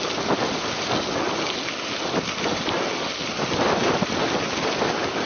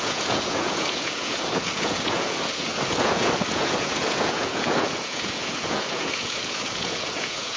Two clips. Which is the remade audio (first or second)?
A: second